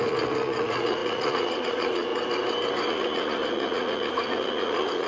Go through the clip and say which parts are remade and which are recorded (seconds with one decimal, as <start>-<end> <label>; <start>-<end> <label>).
0.0-2.1 remade; 2.1-2.9 recorded; 2.9-5.1 remade